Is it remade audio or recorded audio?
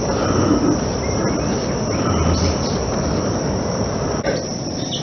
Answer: recorded